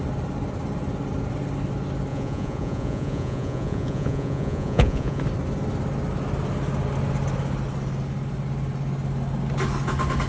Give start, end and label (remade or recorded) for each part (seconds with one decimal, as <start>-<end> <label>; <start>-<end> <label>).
0.0-2.1 recorded; 2.1-5.2 remade; 5.2-10.3 recorded